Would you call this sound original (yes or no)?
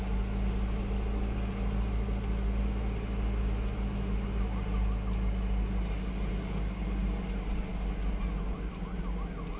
yes